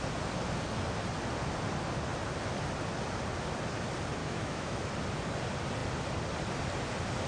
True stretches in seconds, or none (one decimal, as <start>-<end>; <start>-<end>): 0.0-4.2; 4.9-7.3